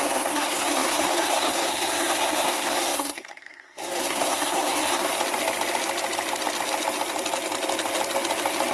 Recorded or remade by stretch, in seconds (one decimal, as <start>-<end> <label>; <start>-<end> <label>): 0.0-5.1 remade; 5.1-8.7 recorded